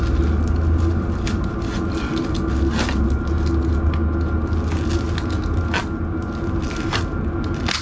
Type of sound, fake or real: real